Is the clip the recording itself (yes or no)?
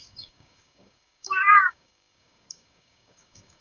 no